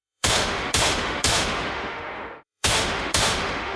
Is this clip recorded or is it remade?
remade